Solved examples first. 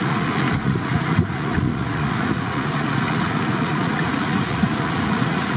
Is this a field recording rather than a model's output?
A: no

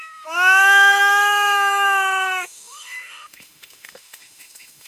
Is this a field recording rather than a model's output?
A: no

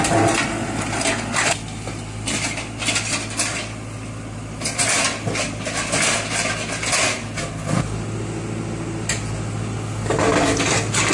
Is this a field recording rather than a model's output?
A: yes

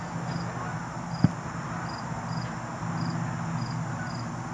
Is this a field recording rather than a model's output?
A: yes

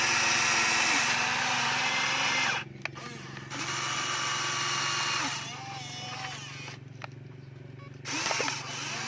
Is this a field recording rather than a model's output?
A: yes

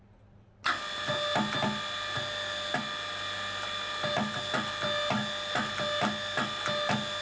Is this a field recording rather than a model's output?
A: yes